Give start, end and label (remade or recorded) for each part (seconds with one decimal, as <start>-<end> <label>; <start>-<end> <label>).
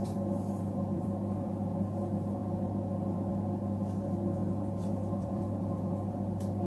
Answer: 0.0-2.4 remade; 2.4-3.3 recorded; 3.3-4.4 remade; 4.4-5.1 recorded; 5.1-6.7 remade